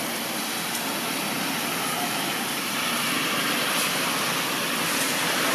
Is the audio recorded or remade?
recorded